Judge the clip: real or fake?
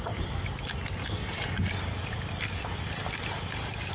real